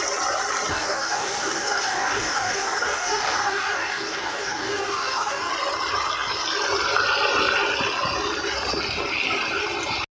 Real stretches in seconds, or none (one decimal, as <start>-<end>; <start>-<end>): 0.0-0.7; 5.5-10.2